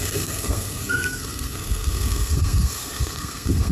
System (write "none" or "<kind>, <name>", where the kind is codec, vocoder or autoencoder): codec, SNAC